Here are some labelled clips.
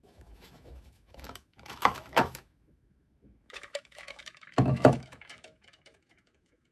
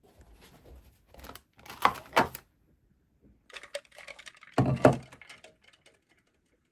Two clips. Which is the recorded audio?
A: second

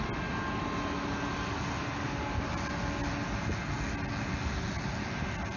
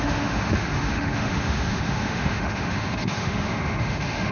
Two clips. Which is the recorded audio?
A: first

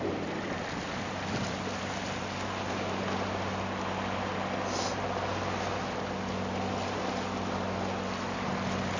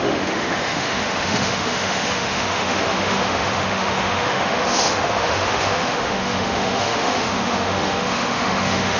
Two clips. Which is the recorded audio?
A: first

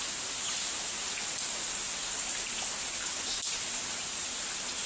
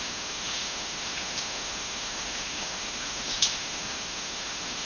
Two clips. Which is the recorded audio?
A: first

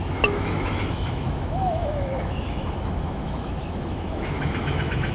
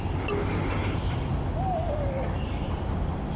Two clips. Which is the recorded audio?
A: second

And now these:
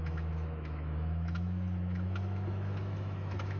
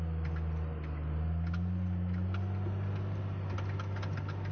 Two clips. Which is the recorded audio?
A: second